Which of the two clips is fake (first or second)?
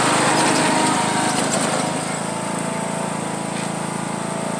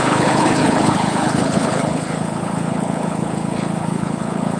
second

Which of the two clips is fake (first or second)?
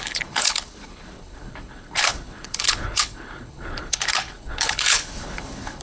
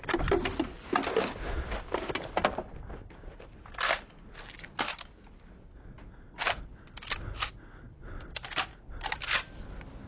first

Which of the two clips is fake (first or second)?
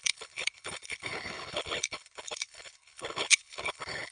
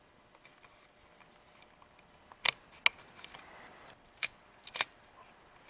first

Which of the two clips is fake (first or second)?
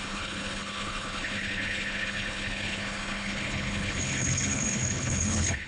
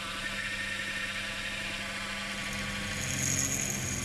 first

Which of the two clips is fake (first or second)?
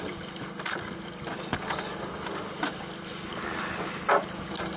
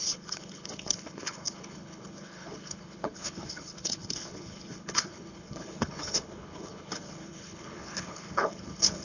second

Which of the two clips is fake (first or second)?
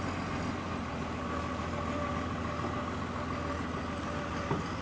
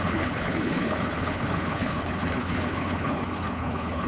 second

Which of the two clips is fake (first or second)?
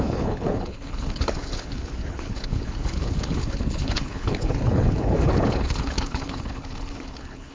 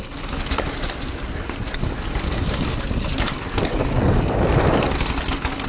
first